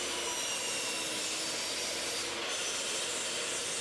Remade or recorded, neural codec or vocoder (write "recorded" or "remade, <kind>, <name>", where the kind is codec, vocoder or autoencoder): remade, vocoder, BigVGAN v2